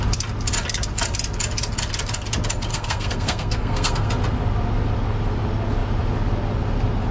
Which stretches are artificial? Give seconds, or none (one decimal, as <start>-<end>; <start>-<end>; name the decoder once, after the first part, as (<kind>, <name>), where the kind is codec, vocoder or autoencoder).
2.7-4.1 (codec, SNAC)